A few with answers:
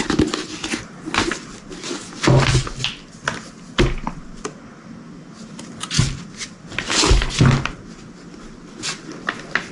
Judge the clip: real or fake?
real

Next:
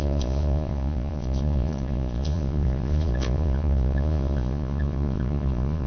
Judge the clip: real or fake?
fake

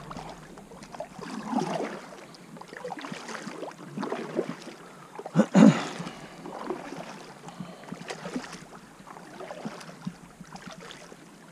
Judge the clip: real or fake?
real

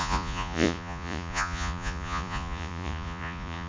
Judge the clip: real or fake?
fake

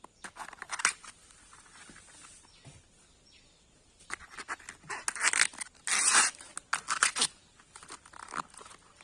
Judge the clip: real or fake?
real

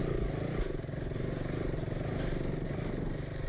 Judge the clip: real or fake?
real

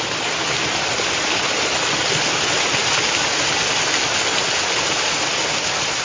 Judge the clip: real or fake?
real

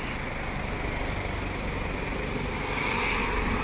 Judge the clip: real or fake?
real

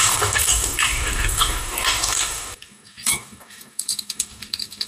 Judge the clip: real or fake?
fake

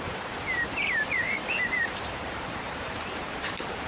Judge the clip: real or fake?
fake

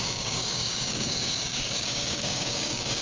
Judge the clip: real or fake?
fake